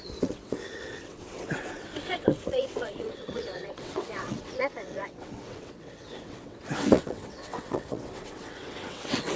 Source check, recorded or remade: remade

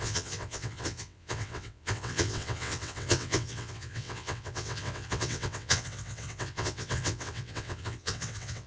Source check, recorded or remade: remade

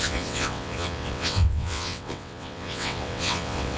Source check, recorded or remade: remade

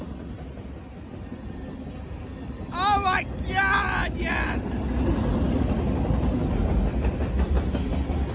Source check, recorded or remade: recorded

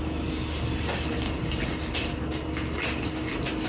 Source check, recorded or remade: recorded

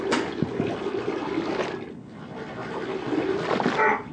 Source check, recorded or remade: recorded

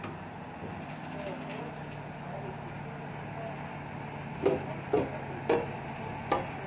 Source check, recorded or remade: recorded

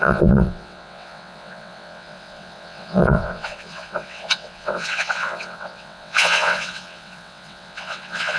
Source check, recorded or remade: remade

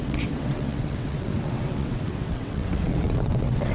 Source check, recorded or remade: remade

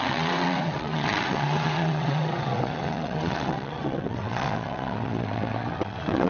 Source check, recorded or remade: remade